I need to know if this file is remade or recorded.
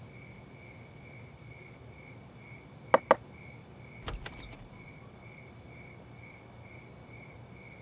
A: recorded